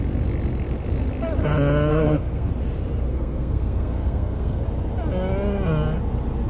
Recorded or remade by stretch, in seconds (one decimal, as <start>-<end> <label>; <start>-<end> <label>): 0.0-1.9 recorded; 1.9-2.5 remade; 2.5-3.1 recorded; 3.1-4.6 remade; 4.6-6.5 recorded